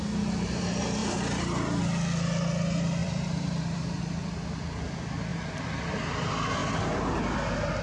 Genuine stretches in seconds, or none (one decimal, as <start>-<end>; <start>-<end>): 0.0-1.0; 1.8-3.0; 4.0-7.8